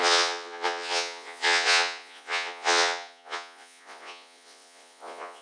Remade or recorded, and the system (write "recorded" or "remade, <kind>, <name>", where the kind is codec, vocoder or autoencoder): remade, vocoder, Vocos